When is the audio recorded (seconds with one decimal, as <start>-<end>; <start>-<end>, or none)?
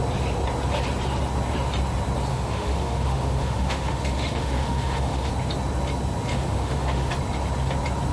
0.0-2.3; 5.3-6.3; 7.1-8.1